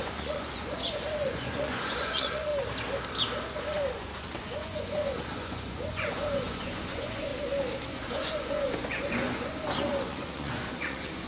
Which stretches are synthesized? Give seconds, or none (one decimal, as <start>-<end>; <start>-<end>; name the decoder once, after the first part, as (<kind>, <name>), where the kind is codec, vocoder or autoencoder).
0.0-2.5 (vocoder, Vocos); 3.6-7.3; 7.9-11.3